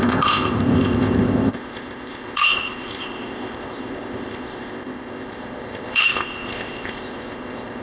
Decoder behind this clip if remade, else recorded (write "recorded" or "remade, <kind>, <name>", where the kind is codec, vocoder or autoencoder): remade, codec, ZipCodec